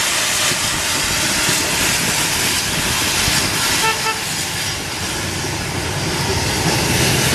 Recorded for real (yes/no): yes